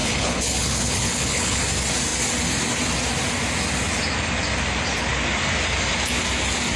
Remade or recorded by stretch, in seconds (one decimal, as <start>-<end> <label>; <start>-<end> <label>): 0.0-1.6 remade; 1.6-6.8 recorded